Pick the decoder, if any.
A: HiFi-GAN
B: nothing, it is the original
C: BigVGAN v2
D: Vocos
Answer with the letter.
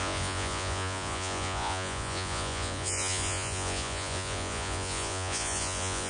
D